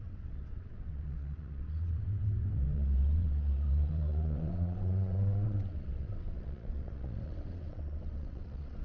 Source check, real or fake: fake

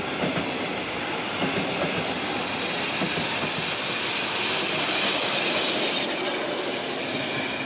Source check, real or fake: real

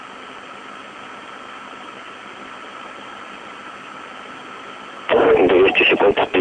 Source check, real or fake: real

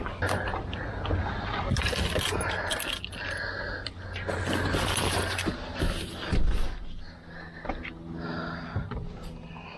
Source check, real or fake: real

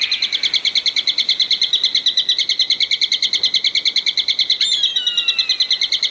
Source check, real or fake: real